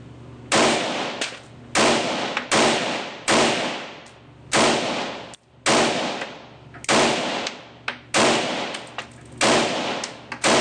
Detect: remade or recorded recorded